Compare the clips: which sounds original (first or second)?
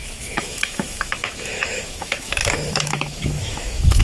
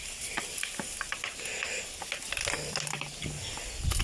second